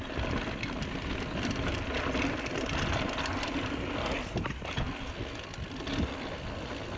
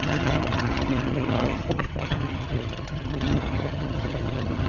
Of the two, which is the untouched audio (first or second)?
first